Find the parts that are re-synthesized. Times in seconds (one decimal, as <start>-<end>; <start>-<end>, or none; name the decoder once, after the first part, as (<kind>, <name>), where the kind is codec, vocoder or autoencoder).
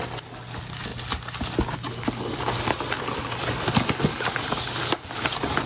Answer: none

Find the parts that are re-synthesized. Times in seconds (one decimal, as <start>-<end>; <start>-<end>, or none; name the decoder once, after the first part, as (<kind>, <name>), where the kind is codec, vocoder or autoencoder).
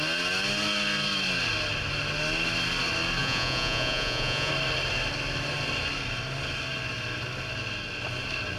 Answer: 3.2-4.5 (vocoder, Vocos)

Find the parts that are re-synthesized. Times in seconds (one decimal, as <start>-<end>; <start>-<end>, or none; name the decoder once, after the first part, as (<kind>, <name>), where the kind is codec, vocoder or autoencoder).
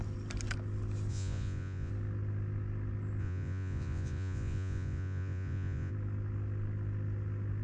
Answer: 1.1-1.9 (vocoder, Vocos); 3.2-5.9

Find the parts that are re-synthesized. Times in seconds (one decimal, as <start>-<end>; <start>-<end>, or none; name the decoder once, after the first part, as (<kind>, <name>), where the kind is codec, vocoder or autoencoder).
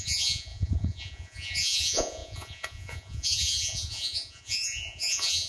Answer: 0.0-5.5 (vocoder, Vocos)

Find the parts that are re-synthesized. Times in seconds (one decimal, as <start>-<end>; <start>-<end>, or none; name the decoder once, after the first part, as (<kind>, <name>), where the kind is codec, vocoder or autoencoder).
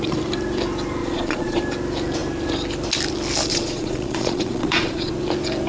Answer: 1.0-1.6 (vocoder, Vocos); 3.5-5.1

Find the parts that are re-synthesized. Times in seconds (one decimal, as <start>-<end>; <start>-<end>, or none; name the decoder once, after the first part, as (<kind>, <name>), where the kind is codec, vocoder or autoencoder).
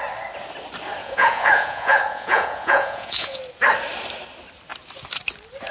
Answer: 1.0-3.4 (vocoder, Vocos)